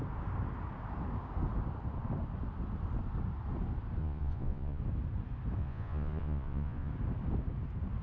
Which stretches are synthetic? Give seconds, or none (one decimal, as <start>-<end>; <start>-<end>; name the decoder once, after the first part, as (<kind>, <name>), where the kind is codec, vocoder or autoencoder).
4.0-4.8 (vocoder, Vocos); 5.6-6.9